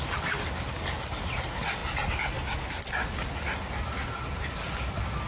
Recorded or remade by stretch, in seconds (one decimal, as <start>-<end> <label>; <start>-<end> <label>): 0.0-5.3 recorded